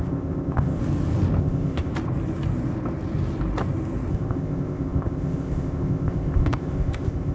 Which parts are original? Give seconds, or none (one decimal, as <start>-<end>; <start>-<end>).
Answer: 0.8-1.4; 1.9-4.1